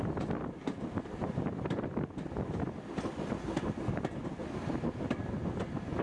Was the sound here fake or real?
real